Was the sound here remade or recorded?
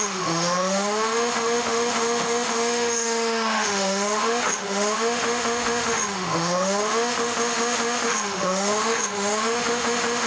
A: remade